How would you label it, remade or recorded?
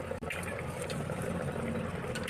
recorded